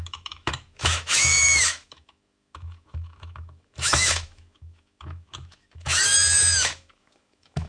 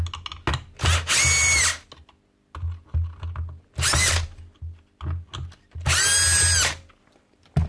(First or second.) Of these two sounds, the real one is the second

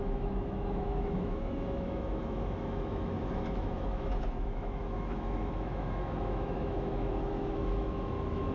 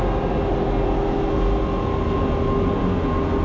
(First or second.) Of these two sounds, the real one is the second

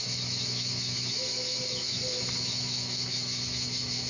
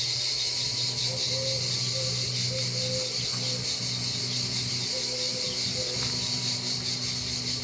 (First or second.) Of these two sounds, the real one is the second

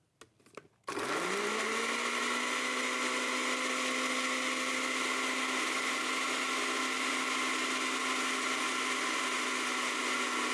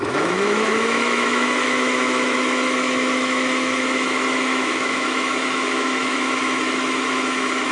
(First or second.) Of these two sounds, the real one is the first